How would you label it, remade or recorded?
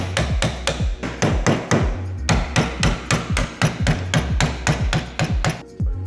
recorded